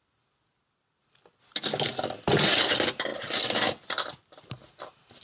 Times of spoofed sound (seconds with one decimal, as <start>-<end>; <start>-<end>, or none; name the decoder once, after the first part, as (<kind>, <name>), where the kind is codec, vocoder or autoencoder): none